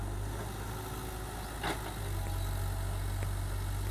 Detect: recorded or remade recorded